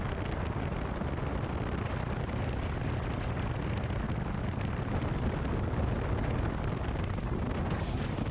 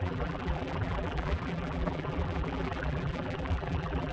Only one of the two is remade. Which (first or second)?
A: second